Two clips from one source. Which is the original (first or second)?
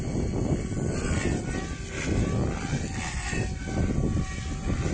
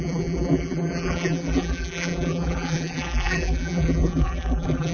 first